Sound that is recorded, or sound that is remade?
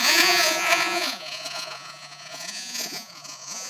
remade